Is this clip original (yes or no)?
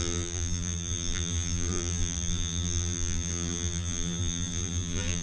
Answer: no